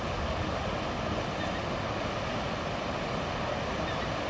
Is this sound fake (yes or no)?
no